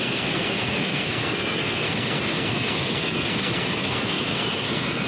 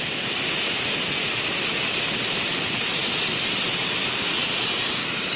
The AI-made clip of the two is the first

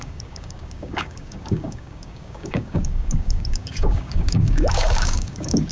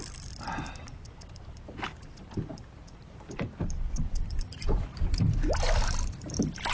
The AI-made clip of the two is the first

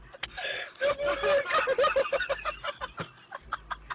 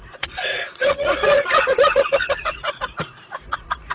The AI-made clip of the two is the second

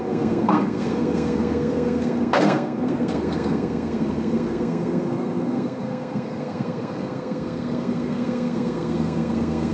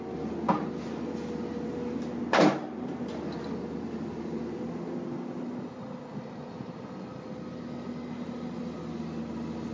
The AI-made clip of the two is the first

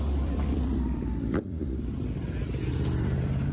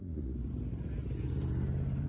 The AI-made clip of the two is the first